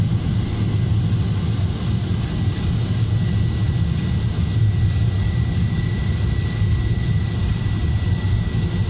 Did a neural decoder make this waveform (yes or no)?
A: no